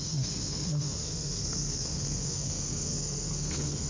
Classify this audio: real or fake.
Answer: fake